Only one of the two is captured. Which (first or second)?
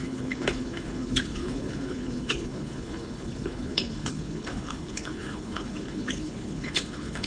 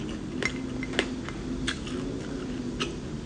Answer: second